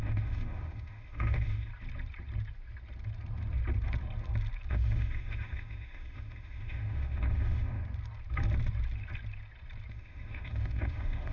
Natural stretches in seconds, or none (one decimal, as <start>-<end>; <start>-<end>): 1.7-4.7; 7.8-9.9